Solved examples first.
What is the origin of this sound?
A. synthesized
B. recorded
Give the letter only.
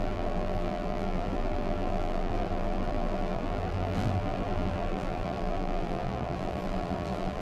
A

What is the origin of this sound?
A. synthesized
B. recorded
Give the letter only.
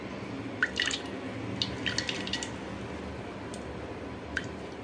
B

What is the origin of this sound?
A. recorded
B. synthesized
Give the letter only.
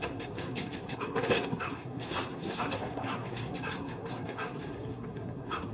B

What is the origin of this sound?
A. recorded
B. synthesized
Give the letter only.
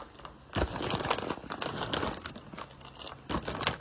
A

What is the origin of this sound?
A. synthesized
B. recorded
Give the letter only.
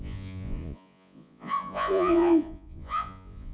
A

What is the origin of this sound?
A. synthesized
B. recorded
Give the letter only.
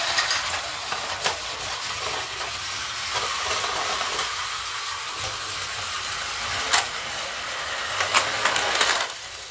B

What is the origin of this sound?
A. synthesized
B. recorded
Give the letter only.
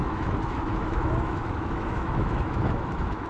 A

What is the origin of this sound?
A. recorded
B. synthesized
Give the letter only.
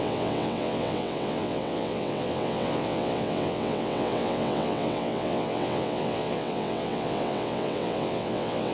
B